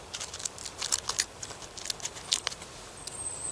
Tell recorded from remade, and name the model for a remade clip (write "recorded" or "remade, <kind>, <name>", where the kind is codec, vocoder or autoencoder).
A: recorded